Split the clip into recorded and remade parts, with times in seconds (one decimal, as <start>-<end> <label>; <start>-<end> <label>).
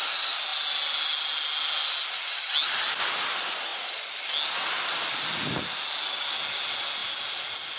0.0-7.8 recorded